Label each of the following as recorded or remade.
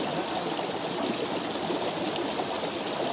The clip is recorded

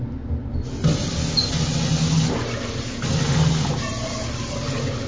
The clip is recorded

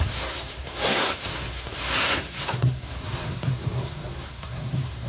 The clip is remade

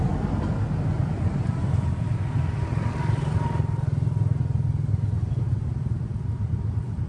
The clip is recorded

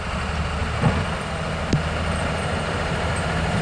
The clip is recorded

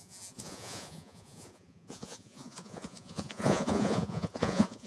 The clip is remade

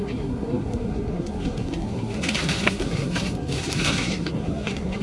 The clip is remade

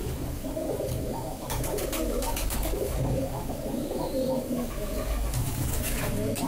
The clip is remade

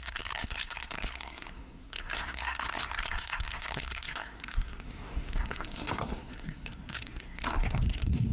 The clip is remade